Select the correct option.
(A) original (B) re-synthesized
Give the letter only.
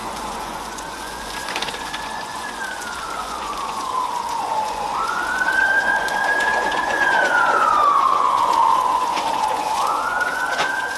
B